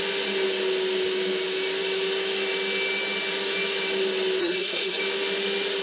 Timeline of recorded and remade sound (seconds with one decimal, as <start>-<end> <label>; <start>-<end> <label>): 0.0-4.4 recorded; 4.4-5.0 remade; 5.0-5.8 recorded